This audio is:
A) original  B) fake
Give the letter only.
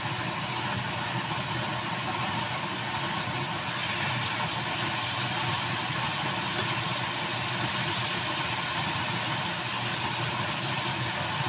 A